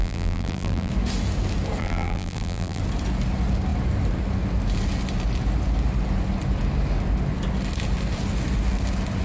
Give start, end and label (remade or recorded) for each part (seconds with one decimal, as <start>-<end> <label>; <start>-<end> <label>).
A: 0.0-0.9 remade; 0.9-1.8 recorded; 1.8-2.8 remade; 2.8-9.2 recorded